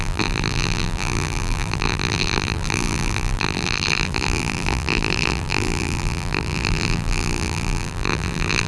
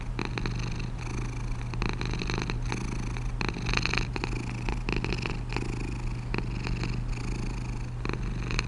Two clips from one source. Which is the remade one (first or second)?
first